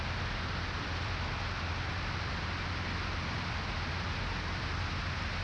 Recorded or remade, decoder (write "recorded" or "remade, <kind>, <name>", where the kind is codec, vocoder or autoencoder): recorded